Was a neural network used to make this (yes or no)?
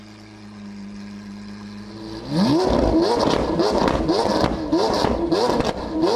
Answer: no